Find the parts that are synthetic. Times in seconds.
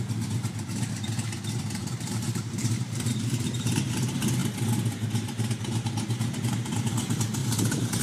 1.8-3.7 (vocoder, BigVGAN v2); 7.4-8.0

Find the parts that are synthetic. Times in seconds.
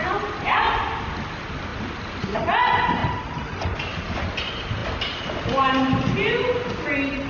1.7-2.3 (vocoder, BigVGAN v2)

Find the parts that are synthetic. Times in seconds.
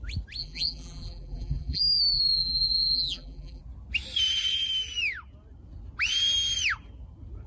0.4-3.6 (vocoder, BigVGAN v2)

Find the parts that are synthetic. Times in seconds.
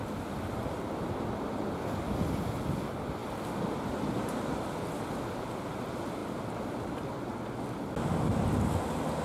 none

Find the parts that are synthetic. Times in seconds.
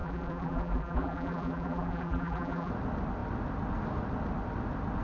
0.0-2.7 (vocoder, BigVGAN v2)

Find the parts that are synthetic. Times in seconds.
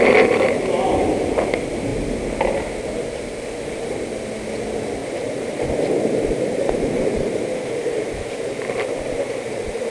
5.0-9.9 (vocoder, BigVGAN v2)